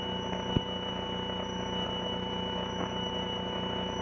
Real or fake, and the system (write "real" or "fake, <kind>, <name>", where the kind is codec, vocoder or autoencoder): fake, autoencoder, DAC-VAE